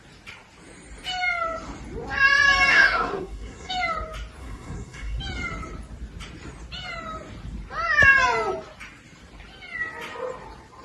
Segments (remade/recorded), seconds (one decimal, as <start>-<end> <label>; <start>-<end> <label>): 0.0-2.7 recorded; 2.7-3.7 remade; 3.7-4.4 recorded; 4.4-5.2 remade; 5.2-10.8 recorded